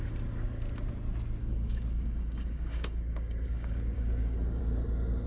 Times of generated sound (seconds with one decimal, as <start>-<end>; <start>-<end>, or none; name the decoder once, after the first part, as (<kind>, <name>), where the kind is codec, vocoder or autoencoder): 1.4-4.6 (codec, DAC)